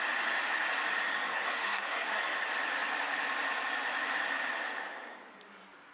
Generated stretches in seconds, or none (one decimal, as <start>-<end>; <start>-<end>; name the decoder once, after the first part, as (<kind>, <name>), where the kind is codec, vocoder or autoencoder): 1.3-2.2 (codec, SNAC)